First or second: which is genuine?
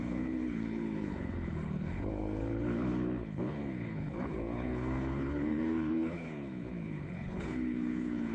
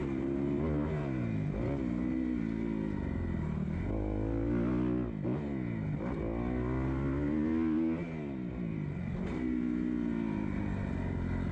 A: second